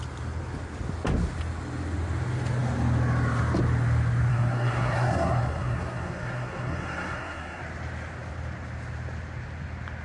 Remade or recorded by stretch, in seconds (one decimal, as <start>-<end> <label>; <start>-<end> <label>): 0.0-4.3 recorded; 4.3-7.6 remade; 7.6-10.0 recorded